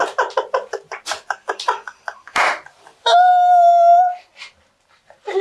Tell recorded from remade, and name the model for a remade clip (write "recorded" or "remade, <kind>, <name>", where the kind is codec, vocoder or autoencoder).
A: remade, vocoder, BigVGAN v2